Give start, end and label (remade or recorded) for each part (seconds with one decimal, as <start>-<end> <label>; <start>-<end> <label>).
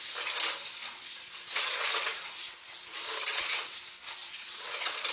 0.0-0.8 recorded; 0.8-2.8 remade; 2.8-3.3 recorded; 3.3-3.8 remade; 3.8-4.2 recorded; 4.2-5.1 remade